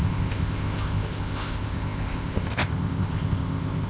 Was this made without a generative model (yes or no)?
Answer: no